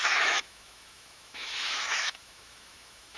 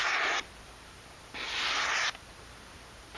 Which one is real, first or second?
second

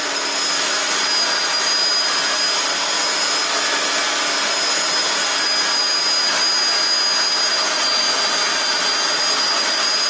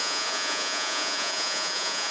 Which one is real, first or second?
first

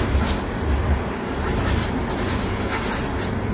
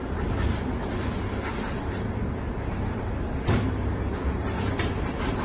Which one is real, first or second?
first